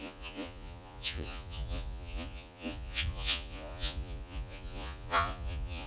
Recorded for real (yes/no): no